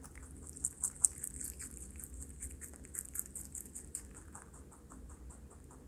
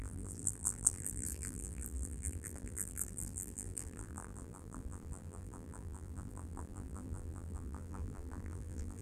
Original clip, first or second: first